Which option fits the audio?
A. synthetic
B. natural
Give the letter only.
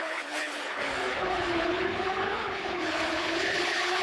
A